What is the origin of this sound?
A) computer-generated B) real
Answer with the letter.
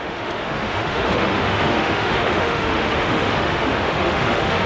A